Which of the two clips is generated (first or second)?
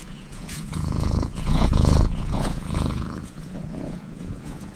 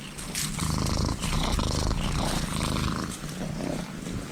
first